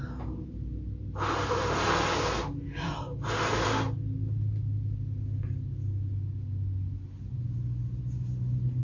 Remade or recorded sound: recorded